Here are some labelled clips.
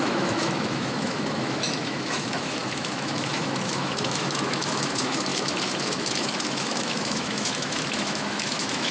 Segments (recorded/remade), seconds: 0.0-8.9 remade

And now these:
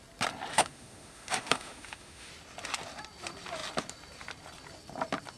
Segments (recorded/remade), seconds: 0.0-0.5 recorded; 0.5-2.3 remade; 2.3-5.4 recorded

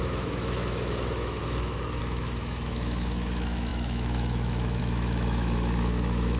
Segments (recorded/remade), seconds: 0.0-6.4 remade

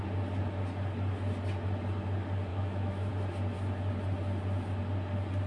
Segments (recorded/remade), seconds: 0.0-2.5 recorded; 2.5-3.1 remade; 3.1-5.5 recorded

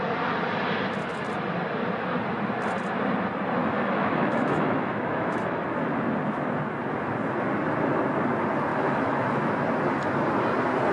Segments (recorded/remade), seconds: 0.0-3.6 recorded; 3.6-5.6 remade; 5.6-8.7 recorded; 8.7-9.5 remade; 9.5-10.9 recorded

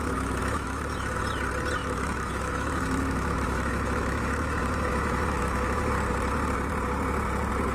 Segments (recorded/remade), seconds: 0.0-1.2 remade; 1.2-1.8 recorded; 1.8-5.9 remade; 5.9-7.7 recorded

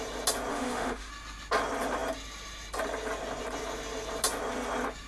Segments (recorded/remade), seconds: 0.0-0.5 recorded; 0.5-1.1 remade; 1.1-5.1 recorded

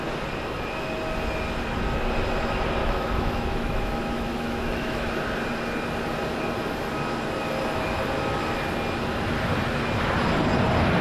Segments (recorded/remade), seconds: 0.0-2.8 recorded; 2.8-5.1 remade; 5.1-11.0 recorded